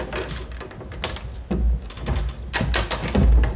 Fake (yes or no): no